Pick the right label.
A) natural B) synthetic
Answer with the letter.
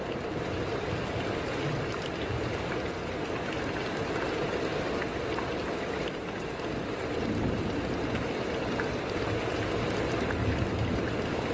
A